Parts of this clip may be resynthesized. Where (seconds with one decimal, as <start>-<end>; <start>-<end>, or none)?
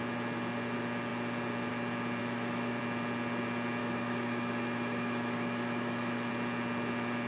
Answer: 2.2-2.8; 3.8-6.3